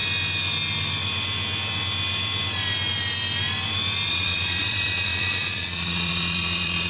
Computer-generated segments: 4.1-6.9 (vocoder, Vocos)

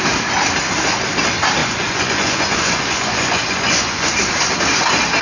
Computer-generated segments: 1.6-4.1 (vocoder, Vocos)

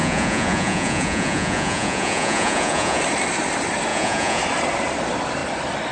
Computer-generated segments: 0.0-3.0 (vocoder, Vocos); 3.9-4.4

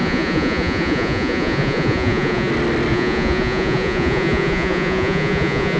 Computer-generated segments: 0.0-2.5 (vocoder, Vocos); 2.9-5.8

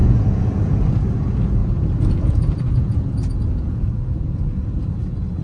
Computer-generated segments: 0.0-0.9 (vocoder, Vocos); 1.6-4.8